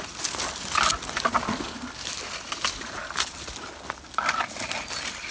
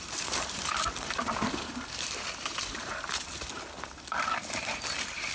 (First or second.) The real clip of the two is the first